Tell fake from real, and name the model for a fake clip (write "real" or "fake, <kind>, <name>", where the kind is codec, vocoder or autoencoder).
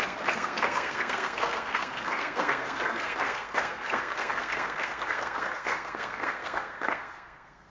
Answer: fake, codec, SNAC